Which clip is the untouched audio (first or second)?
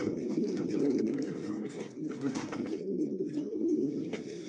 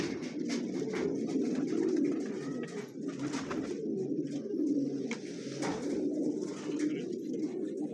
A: second